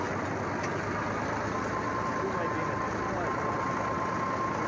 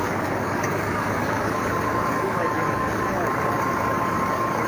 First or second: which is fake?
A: second